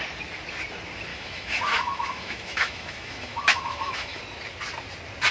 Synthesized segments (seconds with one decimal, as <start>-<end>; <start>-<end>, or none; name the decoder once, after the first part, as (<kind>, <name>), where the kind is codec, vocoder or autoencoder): 1.1-4.2 (autoencoder, DAC-VAE)